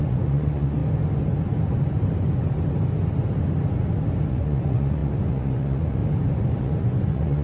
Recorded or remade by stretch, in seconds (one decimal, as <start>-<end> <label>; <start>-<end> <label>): 0.0-0.8 remade; 0.8-4.3 recorded; 4.3-6.0 remade; 6.0-6.6 recorded; 6.6-7.4 remade